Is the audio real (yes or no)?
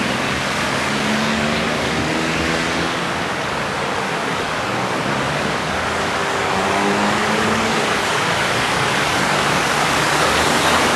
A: no